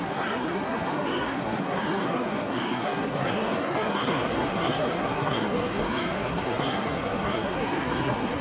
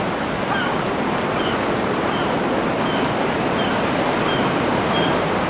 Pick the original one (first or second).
second